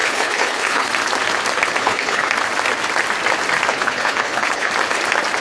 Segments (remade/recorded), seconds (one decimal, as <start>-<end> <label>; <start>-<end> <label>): 0.0-0.9 remade; 0.9-1.8 recorded; 1.8-2.3 remade; 2.3-3.7 recorded; 3.7-4.7 remade; 4.7-5.4 recorded